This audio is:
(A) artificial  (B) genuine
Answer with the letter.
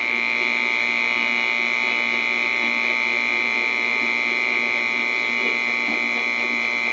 B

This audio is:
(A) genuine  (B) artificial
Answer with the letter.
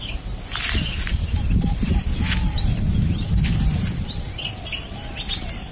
A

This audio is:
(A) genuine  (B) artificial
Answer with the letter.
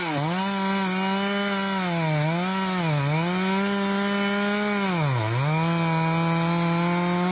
A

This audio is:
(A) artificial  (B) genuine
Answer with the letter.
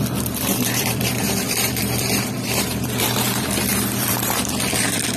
A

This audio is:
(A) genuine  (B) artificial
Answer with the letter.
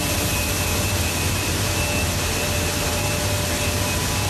A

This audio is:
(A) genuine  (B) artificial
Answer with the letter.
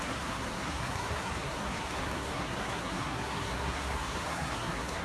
B